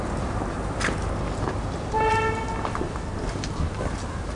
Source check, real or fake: real